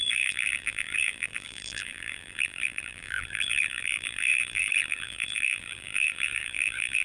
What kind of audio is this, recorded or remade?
remade